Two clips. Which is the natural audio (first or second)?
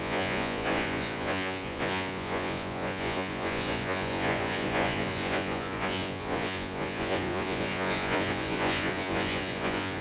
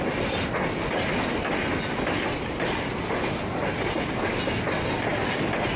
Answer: second